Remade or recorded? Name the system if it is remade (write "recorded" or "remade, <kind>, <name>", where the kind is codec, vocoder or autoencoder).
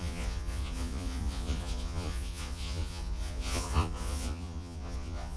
remade, vocoder, Vocos